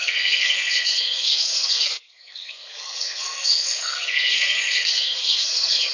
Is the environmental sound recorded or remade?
remade